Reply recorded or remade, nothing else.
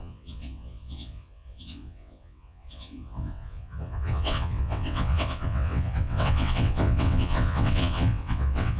remade